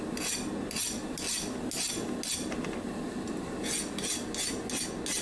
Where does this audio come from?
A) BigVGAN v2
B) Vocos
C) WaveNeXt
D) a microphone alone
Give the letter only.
D